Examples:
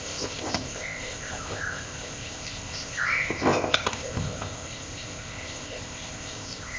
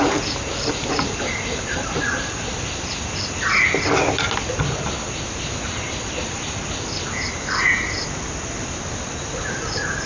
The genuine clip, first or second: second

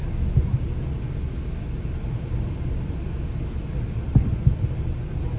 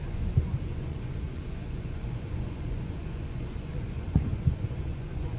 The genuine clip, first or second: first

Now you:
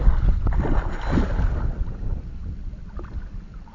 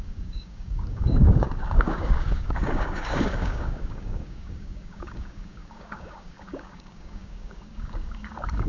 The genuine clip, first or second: first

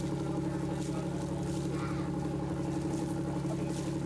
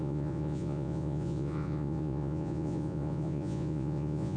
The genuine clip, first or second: first